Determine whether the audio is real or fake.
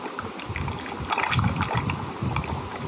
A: real